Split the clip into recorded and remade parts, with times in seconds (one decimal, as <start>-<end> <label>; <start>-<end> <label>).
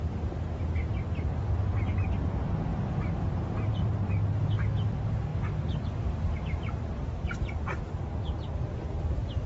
0.0-9.5 recorded